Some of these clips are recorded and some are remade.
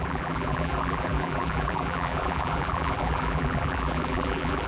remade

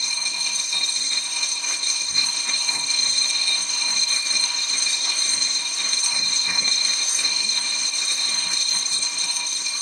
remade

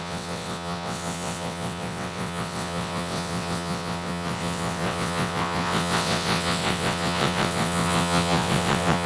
remade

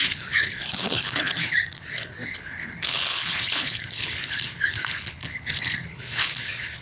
remade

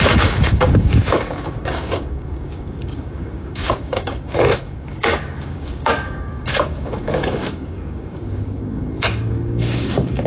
remade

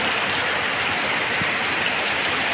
recorded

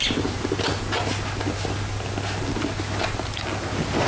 recorded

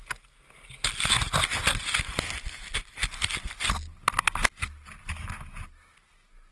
recorded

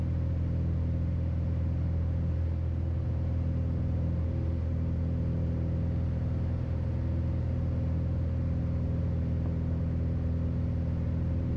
recorded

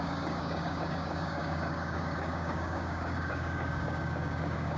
remade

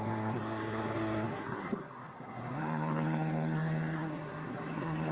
remade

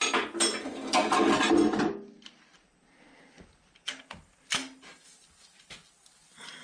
recorded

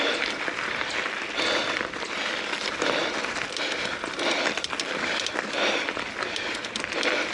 remade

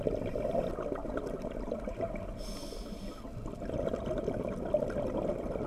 recorded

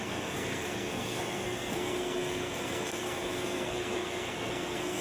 remade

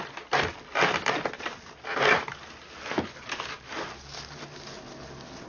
recorded